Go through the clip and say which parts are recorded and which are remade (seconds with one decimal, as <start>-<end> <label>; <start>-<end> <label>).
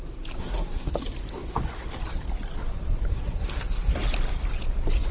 0.0-0.4 recorded; 0.4-0.9 remade; 0.9-3.1 recorded; 3.1-3.9 remade; 3.9-5.1 recorded